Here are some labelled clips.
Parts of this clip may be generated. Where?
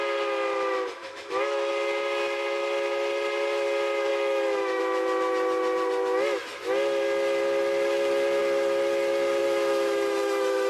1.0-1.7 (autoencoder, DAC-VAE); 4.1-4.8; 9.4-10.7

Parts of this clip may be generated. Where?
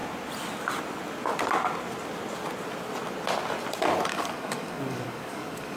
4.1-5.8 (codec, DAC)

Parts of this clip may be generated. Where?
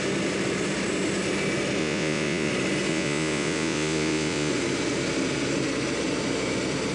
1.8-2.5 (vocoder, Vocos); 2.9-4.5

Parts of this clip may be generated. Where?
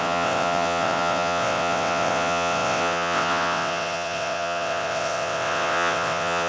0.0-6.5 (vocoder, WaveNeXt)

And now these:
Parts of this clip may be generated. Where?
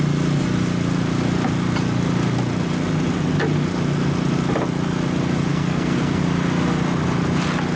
5.5-6.2 (codec, SNAC)